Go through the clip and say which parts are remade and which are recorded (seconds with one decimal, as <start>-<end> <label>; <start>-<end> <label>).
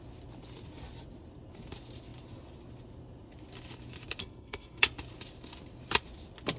0.0-4.2 recorded; 4.2-4.8 remade; 4.8-6.6 recorded